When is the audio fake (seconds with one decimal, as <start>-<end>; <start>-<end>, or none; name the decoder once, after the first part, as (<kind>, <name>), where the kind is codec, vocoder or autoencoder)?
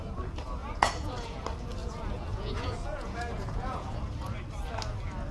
0.6-1.4 (vocoder, Vocos); 1.8-4.0